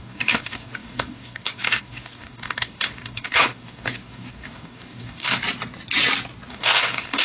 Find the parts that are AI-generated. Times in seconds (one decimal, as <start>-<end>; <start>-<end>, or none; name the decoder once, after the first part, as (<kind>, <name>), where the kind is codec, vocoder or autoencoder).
0.0-5.4 (codec, DAC); 6.5-7.2